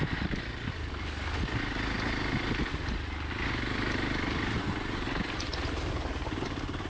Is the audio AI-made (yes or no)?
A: no